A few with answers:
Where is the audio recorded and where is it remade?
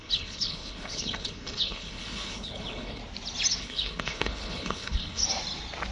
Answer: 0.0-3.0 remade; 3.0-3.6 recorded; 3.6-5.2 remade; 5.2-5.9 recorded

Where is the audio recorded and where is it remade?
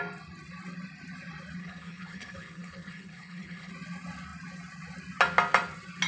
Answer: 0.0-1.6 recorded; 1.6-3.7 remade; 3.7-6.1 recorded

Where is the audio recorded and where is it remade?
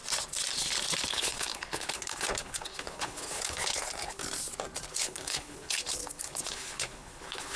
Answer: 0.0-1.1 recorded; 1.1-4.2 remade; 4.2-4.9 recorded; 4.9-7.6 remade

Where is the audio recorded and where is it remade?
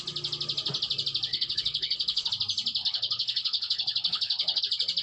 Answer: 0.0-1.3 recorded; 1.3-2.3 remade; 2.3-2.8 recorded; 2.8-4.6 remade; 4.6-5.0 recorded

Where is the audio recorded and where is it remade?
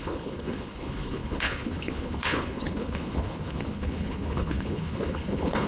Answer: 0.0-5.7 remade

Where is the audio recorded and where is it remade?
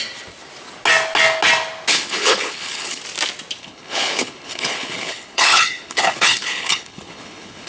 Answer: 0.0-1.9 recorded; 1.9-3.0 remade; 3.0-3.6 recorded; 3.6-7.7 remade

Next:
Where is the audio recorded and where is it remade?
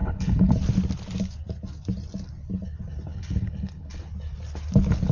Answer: 0.0-0.5 remade; 0.5-3.1 recorded; 3.1-4.0 remade; 4.0-5.1 recorded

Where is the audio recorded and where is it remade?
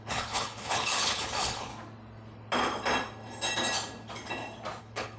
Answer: 0.0-1.7 remade; 1.7-4.8 recorded; 4.8-5.2 remade